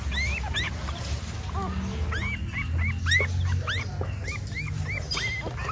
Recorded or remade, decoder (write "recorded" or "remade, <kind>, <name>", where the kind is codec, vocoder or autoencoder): recorded